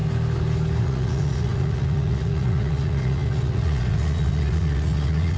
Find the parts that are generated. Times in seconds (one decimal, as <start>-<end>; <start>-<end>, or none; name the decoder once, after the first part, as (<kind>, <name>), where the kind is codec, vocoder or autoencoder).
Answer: 0.8-5.4 (vocoder, Vocos)